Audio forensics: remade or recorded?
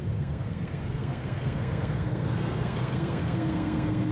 remade